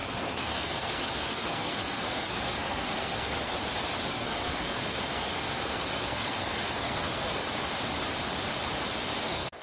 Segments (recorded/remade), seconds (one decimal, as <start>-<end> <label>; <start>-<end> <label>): 0.0-3.6 remade; 3.6-4.1 recorded; 4.1-7.6 remade; 7.6-9.2 recorded; 9.2-9.6 remade